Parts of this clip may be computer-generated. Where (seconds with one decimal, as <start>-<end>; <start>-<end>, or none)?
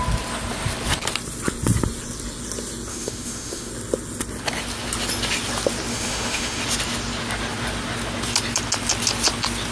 2.9-3.7; 5.9-6.6